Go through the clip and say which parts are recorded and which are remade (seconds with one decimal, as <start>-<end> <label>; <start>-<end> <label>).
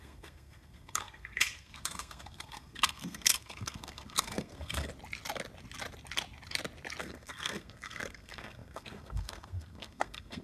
0.0-4.9 remade; 4.9-7.0 recorded; 7.0-10.4 remade